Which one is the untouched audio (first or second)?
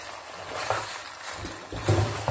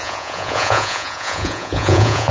first